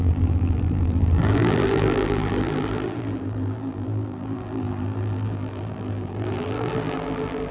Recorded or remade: remade